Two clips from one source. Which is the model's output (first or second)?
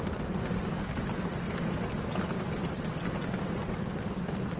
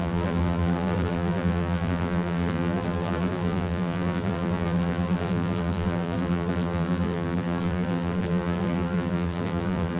second